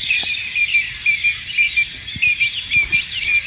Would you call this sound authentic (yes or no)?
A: yes